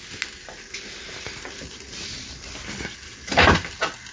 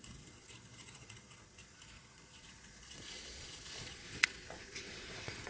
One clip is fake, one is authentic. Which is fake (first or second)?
second